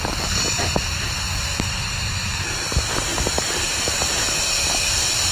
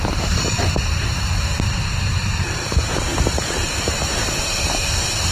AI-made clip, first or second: second